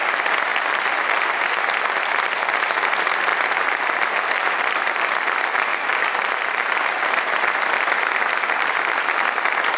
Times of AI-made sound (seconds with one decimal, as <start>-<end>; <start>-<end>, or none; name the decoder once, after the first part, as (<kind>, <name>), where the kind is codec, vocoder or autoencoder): 0.5-1.6 (vocoder, BigVGAN v2); 3.3-5.0; 5.7-7.2